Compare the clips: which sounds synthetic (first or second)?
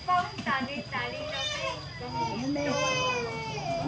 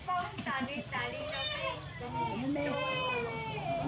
second